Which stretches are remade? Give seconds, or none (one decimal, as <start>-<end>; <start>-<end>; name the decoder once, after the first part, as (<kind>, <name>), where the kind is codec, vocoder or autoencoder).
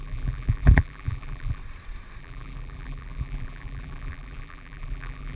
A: 0.0-1.6 (vocoder, BigVGAN v2); 2.2-5.4